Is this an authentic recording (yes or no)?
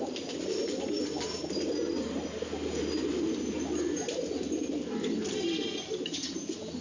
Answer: no